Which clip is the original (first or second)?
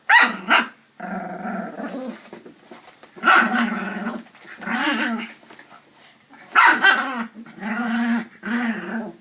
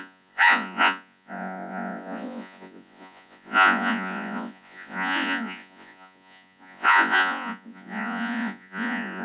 first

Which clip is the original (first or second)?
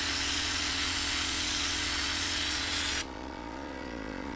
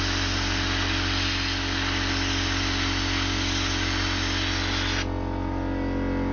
second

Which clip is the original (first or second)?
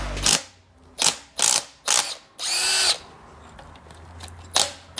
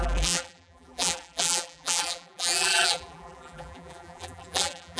first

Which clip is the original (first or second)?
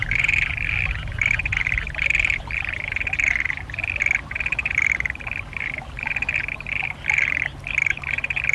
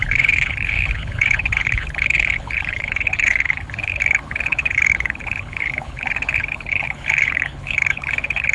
first